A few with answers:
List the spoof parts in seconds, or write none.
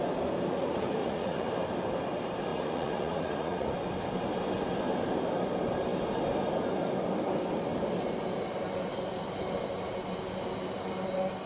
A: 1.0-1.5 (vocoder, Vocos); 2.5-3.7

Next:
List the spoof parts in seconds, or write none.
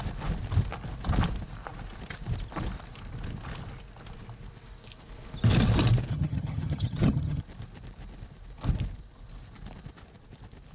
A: 6.1-7.4 (vocoder, HiFi-GAN)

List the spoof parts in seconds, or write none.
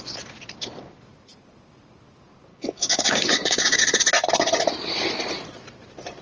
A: 2.5-3.8 (codec, DAC)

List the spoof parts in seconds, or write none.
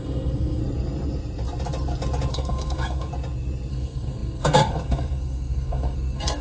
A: 0.0-0.6 (codec, SNAC); 2.3-3.1; 3.7-6.4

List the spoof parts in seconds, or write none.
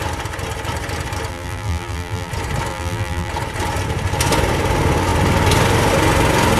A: 1.3-2.3 (vocoder, BigVGAN v2); 2.7-3.3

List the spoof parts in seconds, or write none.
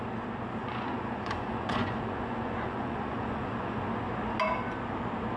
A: 0.6-3.8 (vocoder, Vocos)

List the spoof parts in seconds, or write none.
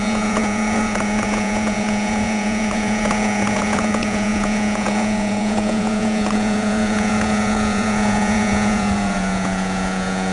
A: 0.0-10.3 (vocoder, Vocos)